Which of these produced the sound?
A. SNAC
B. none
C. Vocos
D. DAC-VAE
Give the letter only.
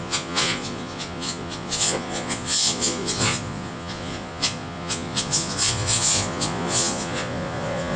C